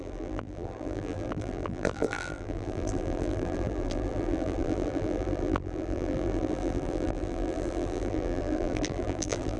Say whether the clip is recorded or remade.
remade